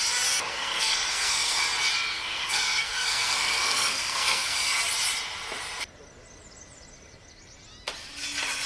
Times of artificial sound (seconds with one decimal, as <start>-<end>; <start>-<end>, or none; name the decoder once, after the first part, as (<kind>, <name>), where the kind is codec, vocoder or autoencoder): 0.5-1.6 (codec, SNAC); 2.1-4.8